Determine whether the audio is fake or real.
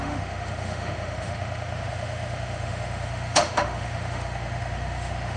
fake